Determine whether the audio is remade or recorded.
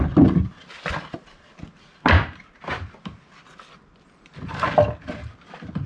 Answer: recorded